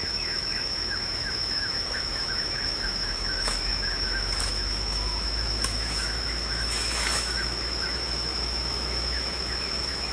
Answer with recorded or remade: remade